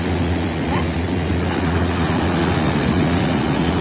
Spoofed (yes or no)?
yes